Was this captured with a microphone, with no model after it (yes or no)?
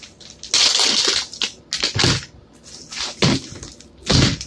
yes